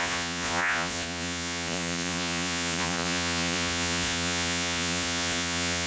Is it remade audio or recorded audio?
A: remade